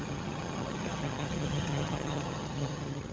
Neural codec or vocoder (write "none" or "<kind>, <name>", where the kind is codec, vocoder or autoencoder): vocoder, HiFi-GAN